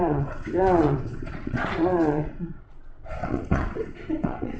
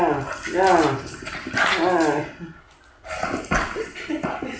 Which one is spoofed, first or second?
first